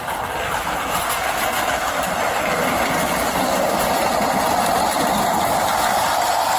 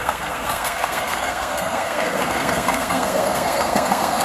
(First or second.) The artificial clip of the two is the second